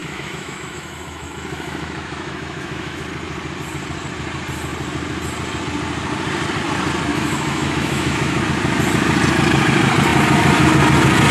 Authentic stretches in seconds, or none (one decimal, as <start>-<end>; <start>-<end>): 3.0-7.1; 8.4-11.3